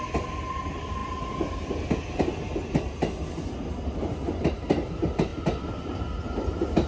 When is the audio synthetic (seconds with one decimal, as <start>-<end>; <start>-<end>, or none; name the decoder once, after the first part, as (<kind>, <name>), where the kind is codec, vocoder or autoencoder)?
none